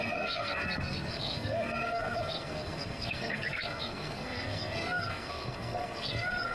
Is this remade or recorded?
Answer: remade